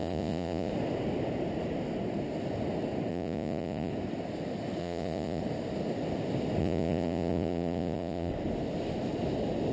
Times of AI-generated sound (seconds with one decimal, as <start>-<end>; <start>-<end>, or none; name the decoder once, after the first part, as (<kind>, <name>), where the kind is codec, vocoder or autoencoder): 0.0-0.7 (vocoder, Vocos); 3.1-3.9; 4.8-5.4; 6.6-8.3